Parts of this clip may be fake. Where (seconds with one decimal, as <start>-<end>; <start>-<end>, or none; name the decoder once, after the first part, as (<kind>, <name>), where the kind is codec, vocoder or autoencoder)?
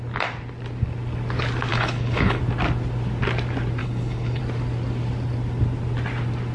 1.7-2.4 (codec, HILCodec); 3.8-4.4